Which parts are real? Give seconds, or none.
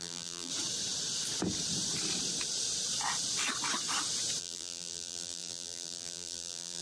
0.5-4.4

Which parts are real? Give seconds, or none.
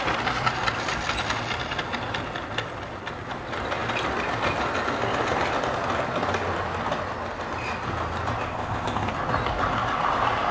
0.0-8.5; 9.1-10.5